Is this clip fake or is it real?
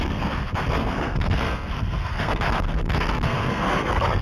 fake